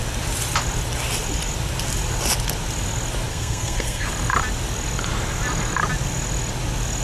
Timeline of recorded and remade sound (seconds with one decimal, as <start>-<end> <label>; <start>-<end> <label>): 0.0-3.3 recorded; 3.3-4.1 remade; 4.1-7.0 recorded